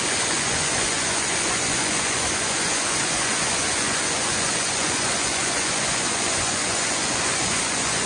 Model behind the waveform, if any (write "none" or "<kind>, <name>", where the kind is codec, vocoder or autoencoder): vocoder, Vocos